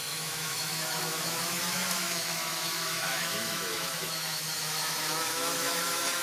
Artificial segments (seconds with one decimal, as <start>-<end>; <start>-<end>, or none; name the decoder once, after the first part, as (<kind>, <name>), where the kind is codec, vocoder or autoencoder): 0.0-6.2 (autoencoder, DAC-VAE)